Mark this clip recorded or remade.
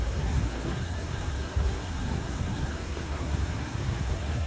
remade